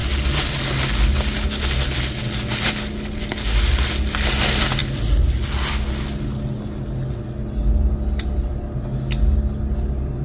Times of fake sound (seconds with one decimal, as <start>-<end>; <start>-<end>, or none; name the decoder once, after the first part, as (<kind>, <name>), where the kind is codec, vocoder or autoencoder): none